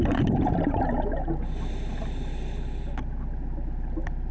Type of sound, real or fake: real